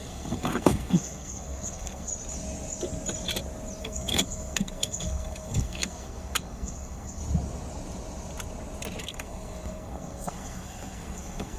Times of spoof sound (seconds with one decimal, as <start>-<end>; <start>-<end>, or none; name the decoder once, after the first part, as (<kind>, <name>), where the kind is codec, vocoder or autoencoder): 0.0-2.1 (codec, SNAC); 3.8-7.2; 9.0-11.6